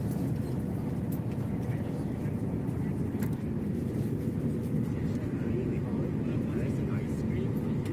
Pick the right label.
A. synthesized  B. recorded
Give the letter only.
B